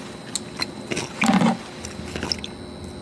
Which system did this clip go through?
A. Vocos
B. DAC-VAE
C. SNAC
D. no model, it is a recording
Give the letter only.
D